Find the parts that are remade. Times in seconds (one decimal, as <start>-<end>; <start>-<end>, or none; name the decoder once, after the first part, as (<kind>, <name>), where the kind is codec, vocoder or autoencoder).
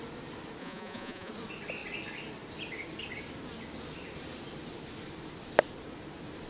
0.6-1.3 (vocoder, Vocos)